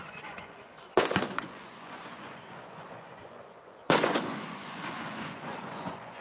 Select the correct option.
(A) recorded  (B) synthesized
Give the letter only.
B